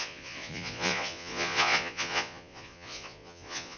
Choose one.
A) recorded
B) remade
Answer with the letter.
B